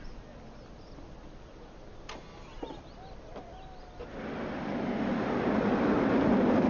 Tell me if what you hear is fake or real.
real